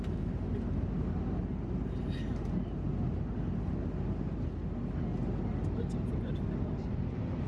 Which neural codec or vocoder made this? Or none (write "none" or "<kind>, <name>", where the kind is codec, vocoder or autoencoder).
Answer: none